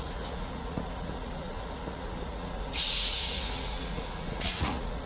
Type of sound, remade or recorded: remade